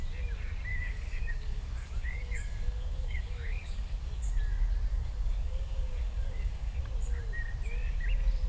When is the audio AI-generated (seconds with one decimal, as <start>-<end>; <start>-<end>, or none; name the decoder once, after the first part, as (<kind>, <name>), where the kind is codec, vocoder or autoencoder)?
0.7-4.3 (codec, DAC); 4.9-6.8